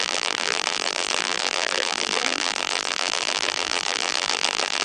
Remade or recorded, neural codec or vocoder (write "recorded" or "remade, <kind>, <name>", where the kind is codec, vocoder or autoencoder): remade, vocoder, BigVGAN v2